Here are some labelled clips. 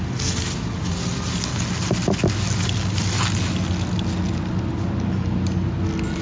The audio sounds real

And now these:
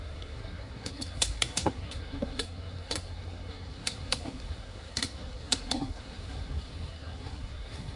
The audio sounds fake